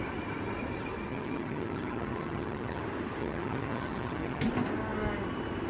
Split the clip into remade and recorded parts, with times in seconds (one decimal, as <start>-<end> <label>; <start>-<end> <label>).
0.0-1.1 recorded; 1.1-2.8 remade; 2.8-3.2 recorded; 3.2-4.4 remade; 4.4-5.7 recorded